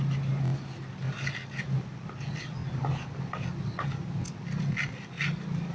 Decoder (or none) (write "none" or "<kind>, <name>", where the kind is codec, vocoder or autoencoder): none